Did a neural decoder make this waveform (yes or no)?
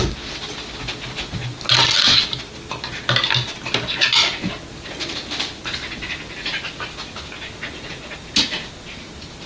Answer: no